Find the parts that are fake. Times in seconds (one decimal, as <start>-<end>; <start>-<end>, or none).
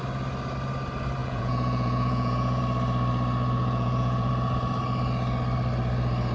1.2-2.6; 3.6-4.3